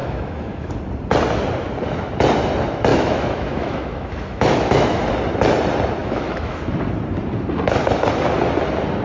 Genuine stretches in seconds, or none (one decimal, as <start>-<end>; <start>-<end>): 0.7-2.9; 5.1-6.0; 6.6-9.0